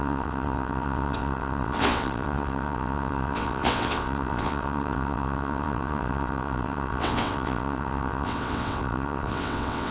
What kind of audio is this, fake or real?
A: fake